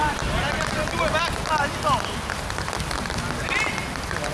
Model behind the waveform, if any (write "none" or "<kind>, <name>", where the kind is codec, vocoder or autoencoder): none